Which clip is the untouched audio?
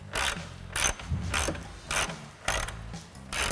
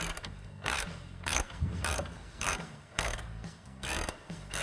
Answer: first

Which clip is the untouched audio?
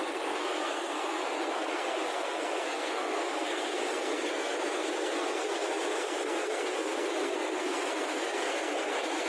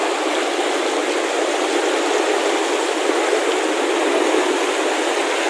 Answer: second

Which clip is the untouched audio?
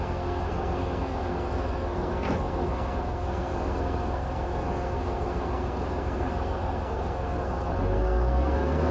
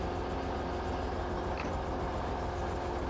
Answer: second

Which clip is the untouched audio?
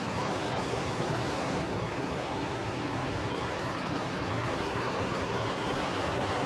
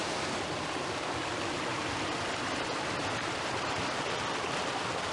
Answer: second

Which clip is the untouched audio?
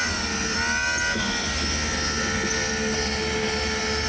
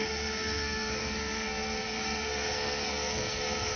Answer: first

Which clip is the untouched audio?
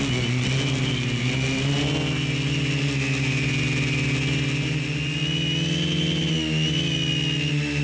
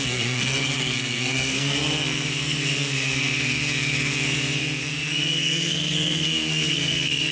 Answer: first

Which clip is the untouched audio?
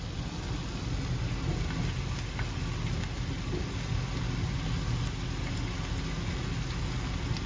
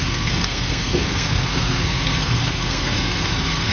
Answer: first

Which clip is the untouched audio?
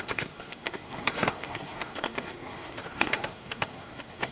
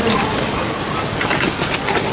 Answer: second